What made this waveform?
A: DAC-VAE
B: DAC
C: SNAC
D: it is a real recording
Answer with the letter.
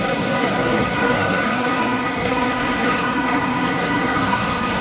C